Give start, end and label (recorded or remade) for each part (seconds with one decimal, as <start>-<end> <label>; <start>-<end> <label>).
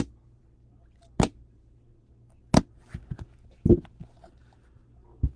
0.0-5.4 recorded